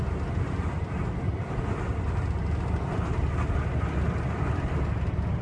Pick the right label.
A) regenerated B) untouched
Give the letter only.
B